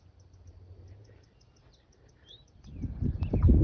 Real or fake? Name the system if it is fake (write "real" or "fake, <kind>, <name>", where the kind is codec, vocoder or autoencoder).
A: real